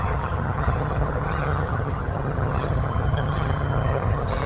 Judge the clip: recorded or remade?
remade